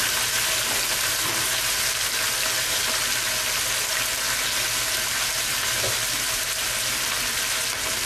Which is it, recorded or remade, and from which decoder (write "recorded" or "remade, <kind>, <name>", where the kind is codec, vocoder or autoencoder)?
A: recorded